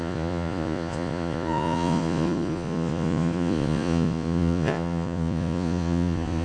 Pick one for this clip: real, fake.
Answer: fake